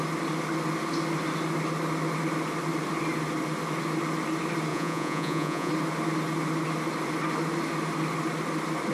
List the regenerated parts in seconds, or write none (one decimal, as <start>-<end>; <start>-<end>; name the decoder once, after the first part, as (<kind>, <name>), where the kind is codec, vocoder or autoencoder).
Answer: 4.7-5.7 (vocoder, Vocos)